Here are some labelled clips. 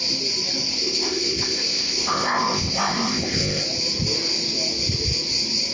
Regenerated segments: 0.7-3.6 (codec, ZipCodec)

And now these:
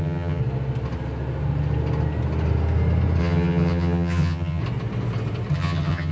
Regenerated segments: 0.0-0.4 (vocoder, HiFi-GAN); 3.2-4.6; 5.5-6.1

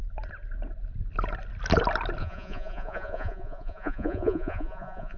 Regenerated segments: 2.2-5.2 (vocoder, Vocos)

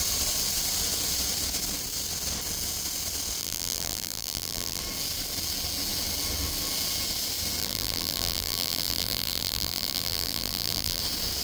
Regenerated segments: 3.4-4.8 (vocoder, BigVGAN v2); 7.6-11.0

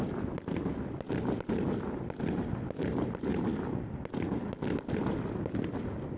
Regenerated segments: none

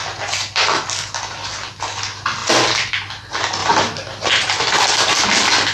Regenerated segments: 3.6-4.3 (vocoder, BigVGAN v2)

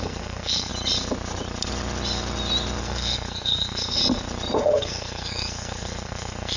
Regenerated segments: 0.0-0.7 (codec, SNAC); 2.8-4.0; 4.6-6.6